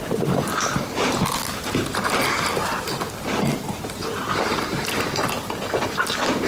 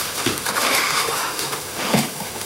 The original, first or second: first